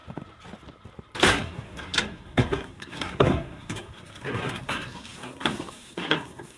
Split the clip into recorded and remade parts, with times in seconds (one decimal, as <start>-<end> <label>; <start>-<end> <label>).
0.0-1.3 recorded; 1.3-6.6 remade